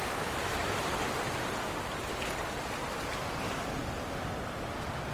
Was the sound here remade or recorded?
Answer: recorded